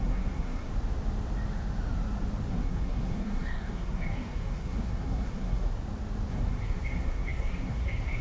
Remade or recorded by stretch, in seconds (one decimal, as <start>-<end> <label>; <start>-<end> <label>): 0.0-0.7 remade; 0.7-2.5 recorded; 2.5-5.7 remade; 5.7-6.3 recorded; 6.3-8.2 remade

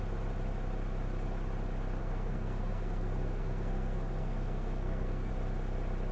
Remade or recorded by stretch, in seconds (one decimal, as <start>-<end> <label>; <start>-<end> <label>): 0.0-2.0 recorded; 2.0-5.3 remade; 5.3-6.1 recorded

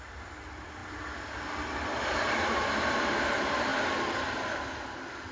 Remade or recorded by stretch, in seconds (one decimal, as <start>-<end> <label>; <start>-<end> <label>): 0.0-5.3 recorded

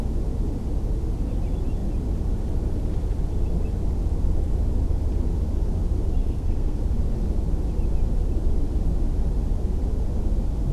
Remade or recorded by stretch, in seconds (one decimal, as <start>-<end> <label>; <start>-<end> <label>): 0.0-6.2 recorded; 6.2-6.8 remade; 6.8-10.7 recorded

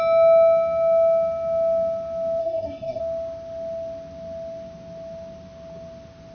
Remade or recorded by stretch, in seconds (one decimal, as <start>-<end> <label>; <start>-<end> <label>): 0.0-2.4 recorded; 2.4-3.0 remade; 3.0-6.3 recorded